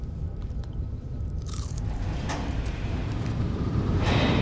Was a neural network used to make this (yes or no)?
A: yes